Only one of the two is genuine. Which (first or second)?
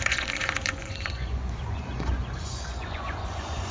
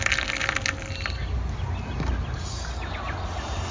second